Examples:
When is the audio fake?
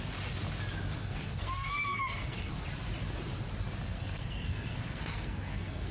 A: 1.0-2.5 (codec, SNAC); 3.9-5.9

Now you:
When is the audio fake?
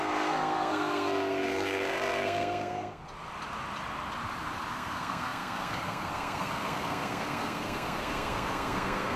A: 0.0-3.0 (codec, SNAC); 4.7-9.2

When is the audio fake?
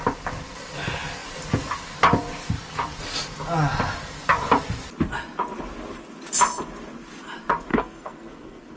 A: 7.7-8.8 (codec, SNAC)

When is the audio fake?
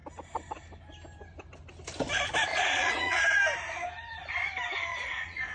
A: 2.5-3.4 (vocoder, Vocos); 4.9-5.5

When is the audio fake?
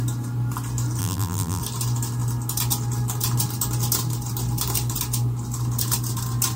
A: 1.0-1.6 (vocoder, BigVGAN v2)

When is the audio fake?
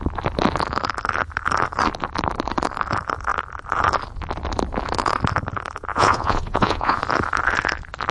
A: 5.9-7.0 (vocoder, Vocos)